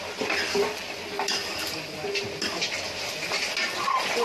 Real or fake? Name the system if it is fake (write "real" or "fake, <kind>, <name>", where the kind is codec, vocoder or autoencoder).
real